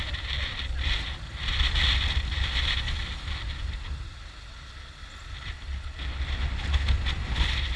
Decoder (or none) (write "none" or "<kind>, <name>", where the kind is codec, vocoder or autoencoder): none